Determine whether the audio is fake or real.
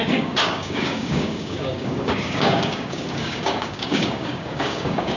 fake